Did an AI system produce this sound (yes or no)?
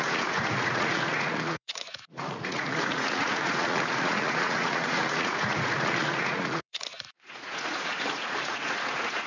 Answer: yes